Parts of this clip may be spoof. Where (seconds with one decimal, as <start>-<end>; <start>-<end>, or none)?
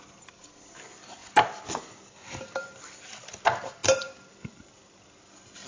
none